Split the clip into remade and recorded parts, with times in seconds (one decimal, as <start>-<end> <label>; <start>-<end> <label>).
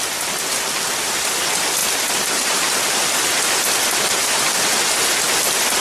0.0-5.8 recorded